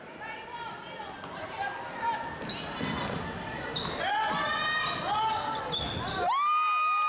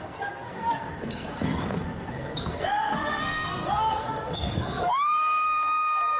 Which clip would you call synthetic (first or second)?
second